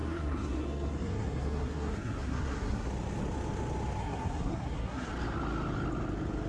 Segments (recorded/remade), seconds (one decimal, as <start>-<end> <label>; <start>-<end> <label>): 0.0-2.9 remade; 2.9-4.0 recorded; 4.0-5.1 remade; 5.1-6.5 recorded